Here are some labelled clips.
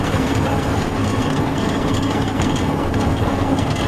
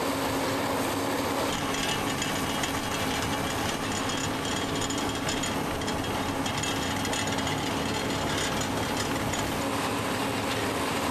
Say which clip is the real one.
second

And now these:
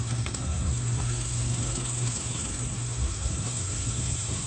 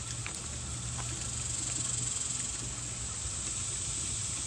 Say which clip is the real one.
second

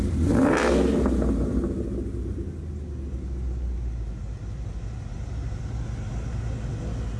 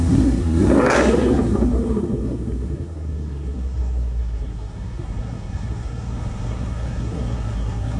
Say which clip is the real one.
first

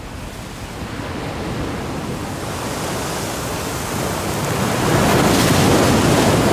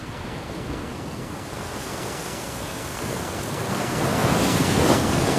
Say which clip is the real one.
first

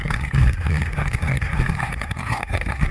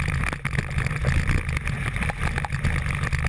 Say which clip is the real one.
second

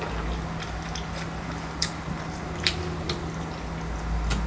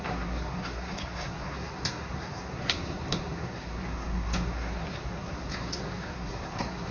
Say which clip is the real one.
first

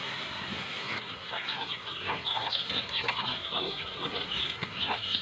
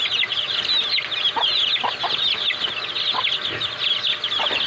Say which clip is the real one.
second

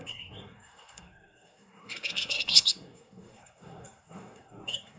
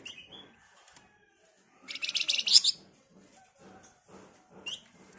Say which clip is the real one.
second